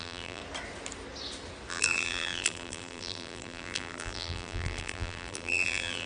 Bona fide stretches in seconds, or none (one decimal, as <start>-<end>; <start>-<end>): 0.4-1.7